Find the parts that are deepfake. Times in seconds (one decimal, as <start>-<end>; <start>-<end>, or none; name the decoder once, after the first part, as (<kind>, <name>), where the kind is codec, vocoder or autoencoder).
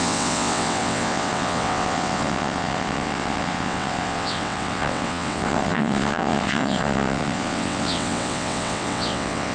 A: 0.0-9.5 (vocoder, WaveNeXt)